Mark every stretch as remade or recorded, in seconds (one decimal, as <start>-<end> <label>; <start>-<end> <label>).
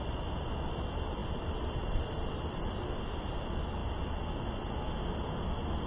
0.0-1.2 recorded; 1.2-2.9 remade; 2.9-5.9 recorded